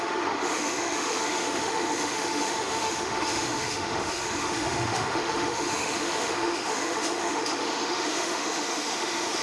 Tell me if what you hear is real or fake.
fake